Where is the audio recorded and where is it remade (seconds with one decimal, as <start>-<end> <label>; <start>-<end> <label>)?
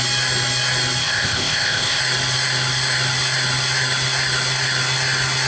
0.0-1.0 recorded; 1.0-2.0 remade; 2.0-5.5 recorded